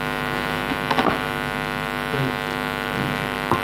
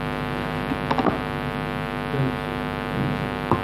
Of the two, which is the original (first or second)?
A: second